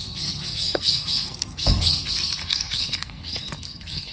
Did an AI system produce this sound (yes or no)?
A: yes